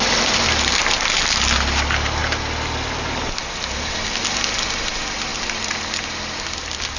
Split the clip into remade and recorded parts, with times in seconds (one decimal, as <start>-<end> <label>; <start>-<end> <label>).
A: 0.0-7.0 recorded